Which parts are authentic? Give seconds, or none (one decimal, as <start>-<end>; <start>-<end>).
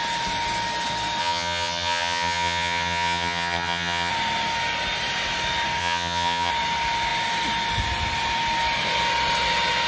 0.0-1.2; 4.1-5.8; 6.5-9.9